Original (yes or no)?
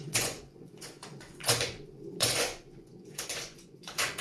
no